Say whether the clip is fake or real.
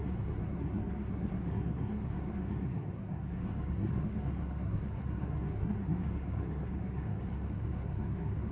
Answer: fake